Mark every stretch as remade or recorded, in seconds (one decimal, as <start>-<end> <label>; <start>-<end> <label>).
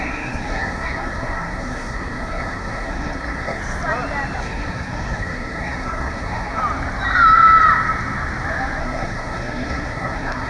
0.0-3.6 remade; 3.6-4.4 recorded; 4.4-6.6 remade; 6.6-8.8 recorded; 8.8-10.5 remade